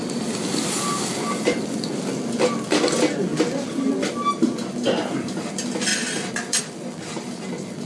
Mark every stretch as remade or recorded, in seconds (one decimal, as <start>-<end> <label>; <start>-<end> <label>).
0.0-7.9 recorded